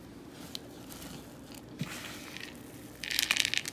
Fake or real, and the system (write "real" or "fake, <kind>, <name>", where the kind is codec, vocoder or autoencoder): real